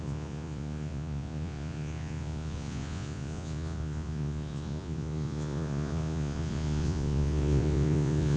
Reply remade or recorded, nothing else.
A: remade